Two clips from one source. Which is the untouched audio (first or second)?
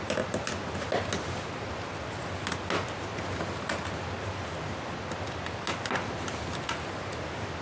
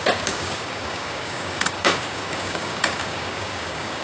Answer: first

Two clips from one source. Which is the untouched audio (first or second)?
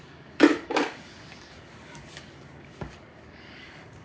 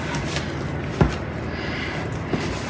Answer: second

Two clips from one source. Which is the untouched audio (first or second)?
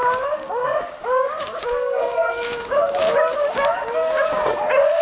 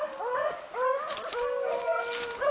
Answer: second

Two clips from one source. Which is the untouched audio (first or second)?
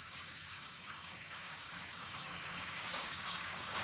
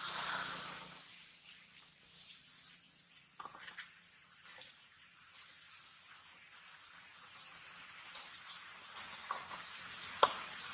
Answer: second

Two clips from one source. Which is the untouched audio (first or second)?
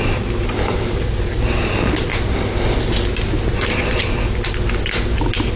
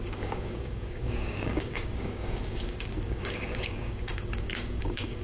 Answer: first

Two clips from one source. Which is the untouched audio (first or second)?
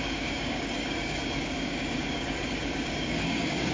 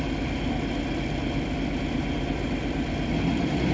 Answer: second